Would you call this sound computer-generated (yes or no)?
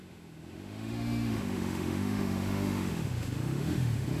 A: yes